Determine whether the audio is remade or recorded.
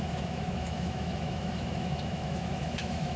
remade